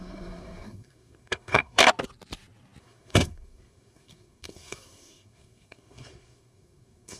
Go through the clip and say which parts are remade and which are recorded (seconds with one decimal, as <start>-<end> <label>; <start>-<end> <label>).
0.0-1.8 remade; 1.8-2.8 recorded; 2.8-7.2 remade